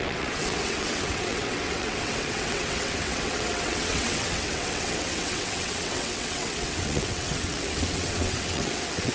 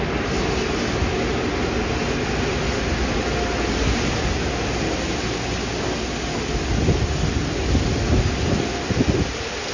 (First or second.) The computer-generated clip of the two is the first